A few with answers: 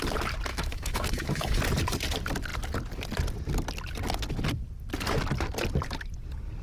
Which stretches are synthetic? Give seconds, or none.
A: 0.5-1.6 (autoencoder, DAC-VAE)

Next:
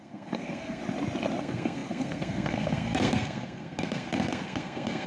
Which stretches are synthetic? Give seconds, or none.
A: 0.0-0.8 (codec, SNAC); 1.4-5.1

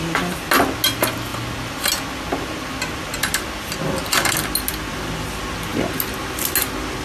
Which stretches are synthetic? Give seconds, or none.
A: none

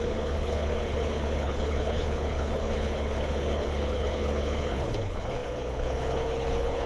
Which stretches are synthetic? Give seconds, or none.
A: 0.0-6.9 (codec, HILCodec)

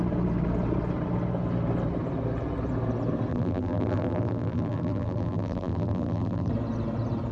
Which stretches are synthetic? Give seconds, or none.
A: 3.3-6.5 (vocoder, BigVGAN v2)

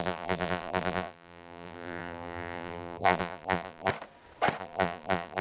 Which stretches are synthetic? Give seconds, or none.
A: 0.0-3.9 (vocoder, BigVGAN v2); 4.6-5.4

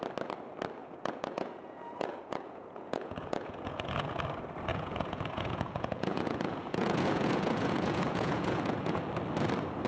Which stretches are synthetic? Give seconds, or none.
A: 0.8-4.2 (vocoder, Vocos); 4.7-9.0